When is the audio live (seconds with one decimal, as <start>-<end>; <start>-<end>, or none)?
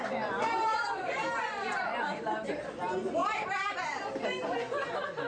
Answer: 0.0-0.7; 2.5-3.2; 4.1-5.3